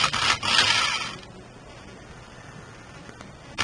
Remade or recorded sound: recorded